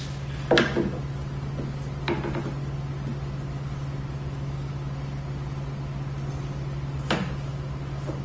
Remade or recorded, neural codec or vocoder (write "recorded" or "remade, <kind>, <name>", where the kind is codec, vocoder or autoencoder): recorded